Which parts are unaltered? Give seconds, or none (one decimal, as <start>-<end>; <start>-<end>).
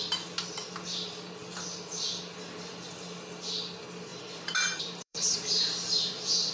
0.0-4.1